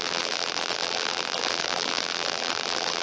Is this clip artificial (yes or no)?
yes